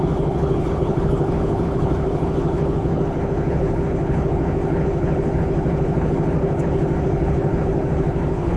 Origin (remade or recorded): remade